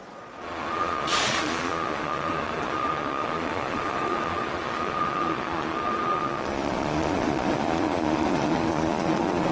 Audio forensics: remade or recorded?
remade